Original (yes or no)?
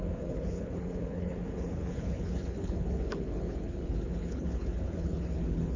no